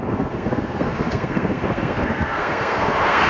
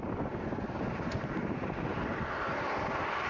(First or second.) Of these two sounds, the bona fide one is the second